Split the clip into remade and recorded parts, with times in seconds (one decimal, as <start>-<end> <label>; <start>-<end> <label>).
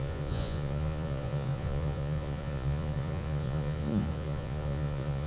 0.0-5.3 remade